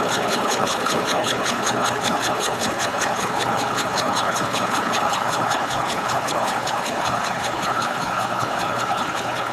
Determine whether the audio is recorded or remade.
remade